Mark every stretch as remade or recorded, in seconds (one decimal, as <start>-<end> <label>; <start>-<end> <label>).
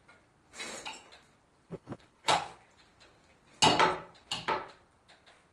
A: 0.0-1.7 recorded; 1.7-2.4 remade; 2.4-5.5 recorded